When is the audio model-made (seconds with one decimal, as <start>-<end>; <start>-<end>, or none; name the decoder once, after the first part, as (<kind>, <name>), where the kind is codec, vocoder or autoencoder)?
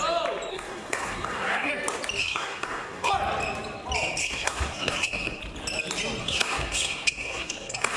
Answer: 0.5-1.7 (codec, SNAC); 2.2-3.1; 4.2-5.4; 6.2-8.0